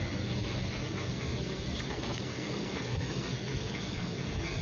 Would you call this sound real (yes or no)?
no